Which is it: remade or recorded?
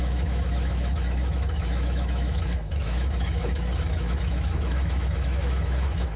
remade